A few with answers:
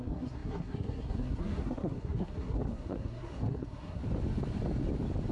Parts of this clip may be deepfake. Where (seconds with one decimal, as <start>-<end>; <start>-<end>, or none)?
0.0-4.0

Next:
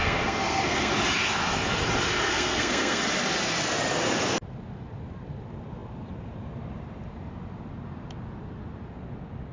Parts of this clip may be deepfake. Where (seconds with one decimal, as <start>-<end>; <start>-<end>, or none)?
0.0-0.9; 2.3-3.0

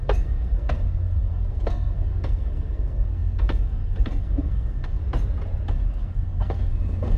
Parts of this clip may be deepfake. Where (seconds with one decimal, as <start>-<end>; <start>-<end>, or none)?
0.0-5.0; 5.7-7.2

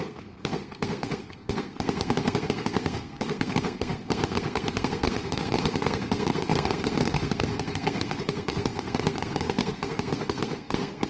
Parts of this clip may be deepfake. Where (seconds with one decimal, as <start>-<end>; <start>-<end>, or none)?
0.0-11.1